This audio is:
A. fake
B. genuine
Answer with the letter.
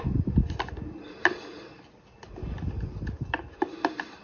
B